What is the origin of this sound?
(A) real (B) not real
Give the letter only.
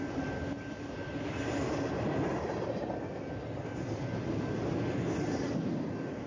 A